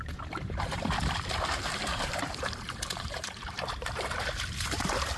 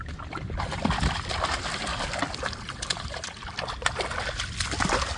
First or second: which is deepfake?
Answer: first